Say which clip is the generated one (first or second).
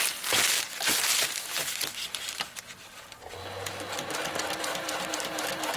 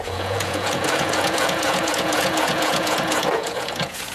second